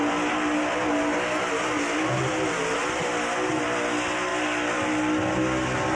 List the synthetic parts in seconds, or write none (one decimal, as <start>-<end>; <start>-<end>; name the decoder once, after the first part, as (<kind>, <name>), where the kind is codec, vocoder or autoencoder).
none